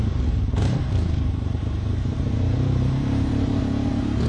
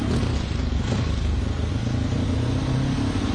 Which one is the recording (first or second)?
second